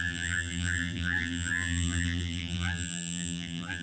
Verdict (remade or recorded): remade